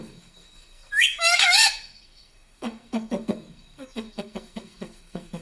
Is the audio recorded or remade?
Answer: remade